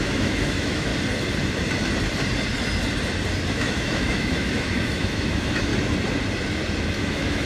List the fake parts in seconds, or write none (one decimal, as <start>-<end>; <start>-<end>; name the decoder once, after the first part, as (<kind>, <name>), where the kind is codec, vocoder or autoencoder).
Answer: 0.0-0.9 (autoencoder, DAC-VAE); 3.5-5.7; 7.0-7.5